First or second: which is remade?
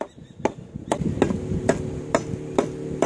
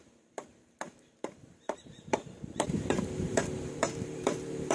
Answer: second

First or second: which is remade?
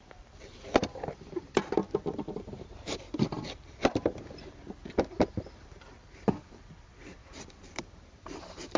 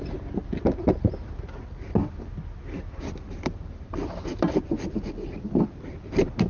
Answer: first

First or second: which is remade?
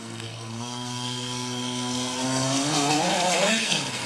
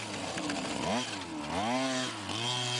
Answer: first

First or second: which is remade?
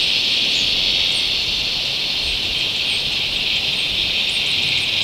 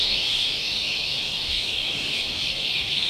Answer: second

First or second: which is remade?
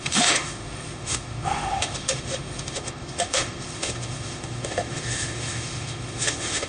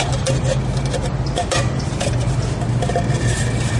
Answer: first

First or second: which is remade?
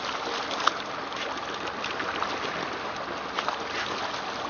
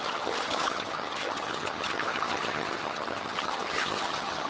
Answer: second